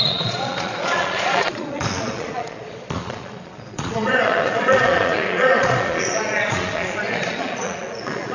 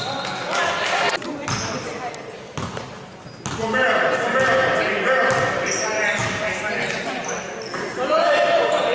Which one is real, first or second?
second